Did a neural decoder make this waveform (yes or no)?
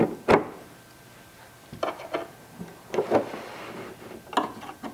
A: no